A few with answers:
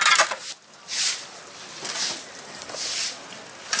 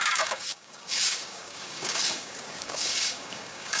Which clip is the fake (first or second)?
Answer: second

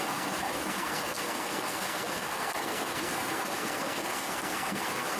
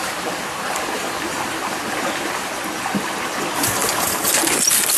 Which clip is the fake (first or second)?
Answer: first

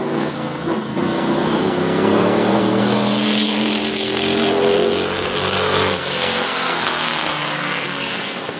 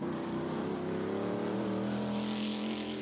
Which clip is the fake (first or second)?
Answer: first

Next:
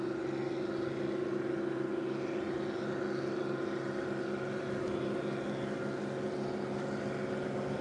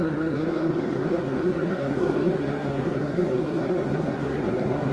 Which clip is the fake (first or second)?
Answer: second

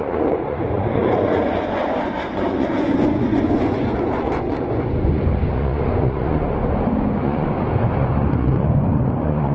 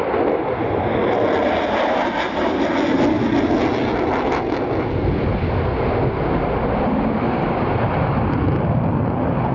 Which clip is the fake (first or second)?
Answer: first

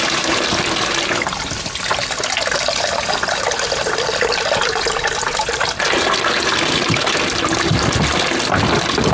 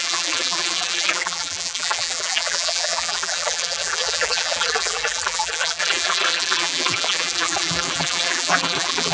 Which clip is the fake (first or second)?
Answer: second